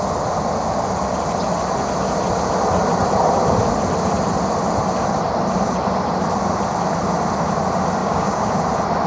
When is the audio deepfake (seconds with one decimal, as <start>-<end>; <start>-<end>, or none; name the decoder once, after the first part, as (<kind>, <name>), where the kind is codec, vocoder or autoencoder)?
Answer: 8.0-8.5 (codec, DAC)